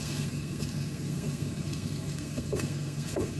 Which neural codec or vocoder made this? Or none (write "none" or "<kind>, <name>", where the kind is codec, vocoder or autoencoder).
codec, SNAC